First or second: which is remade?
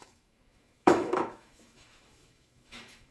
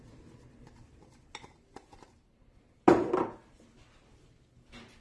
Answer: first